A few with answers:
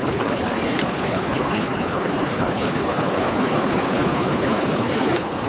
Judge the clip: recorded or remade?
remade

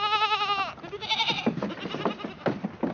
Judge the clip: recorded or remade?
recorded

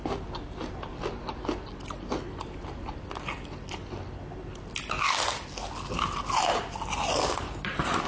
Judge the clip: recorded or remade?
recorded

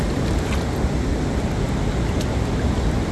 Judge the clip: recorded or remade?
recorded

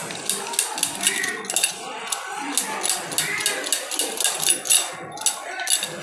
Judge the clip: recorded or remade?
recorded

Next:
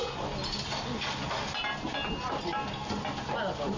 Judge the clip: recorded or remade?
recorded